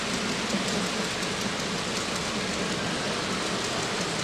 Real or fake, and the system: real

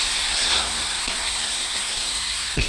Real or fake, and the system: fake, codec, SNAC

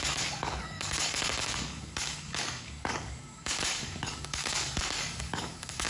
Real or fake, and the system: fake, codec, DAC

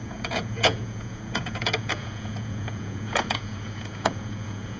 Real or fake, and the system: fake, vocoder, Vocos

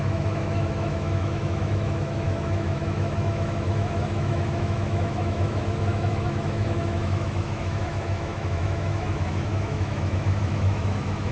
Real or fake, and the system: fake, autoencoder, DAC-VAE